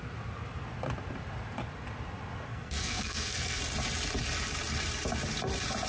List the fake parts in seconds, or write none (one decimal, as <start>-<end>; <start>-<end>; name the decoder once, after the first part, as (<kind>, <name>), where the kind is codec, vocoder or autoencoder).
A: 2.5-3.6 (codec, SNAC)